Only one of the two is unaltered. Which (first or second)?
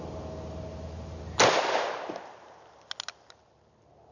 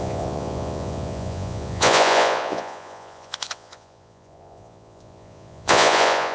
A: first